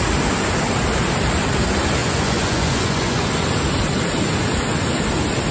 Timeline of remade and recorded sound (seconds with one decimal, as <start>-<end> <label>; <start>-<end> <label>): 0.0-2.0 recorded; 2.0-3.3 remade; 3.3-5.5 recorded